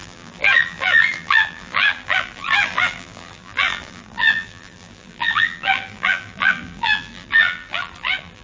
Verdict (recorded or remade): remade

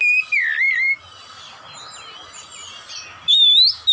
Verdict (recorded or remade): recorded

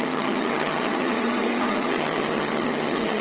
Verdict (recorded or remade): remade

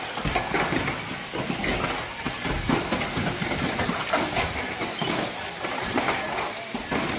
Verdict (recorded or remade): recorded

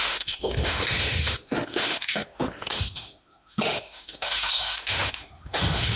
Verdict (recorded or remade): remade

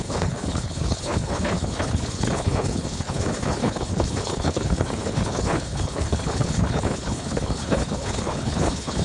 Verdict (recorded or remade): remade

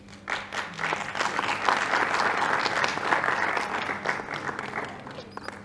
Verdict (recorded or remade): recorded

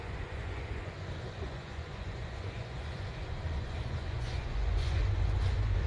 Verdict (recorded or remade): remade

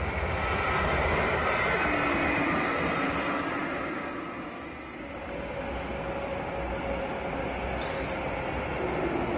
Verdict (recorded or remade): recorded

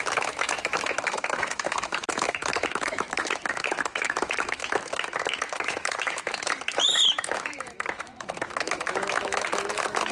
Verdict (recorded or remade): remade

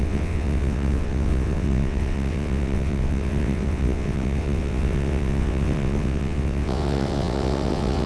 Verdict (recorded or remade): remade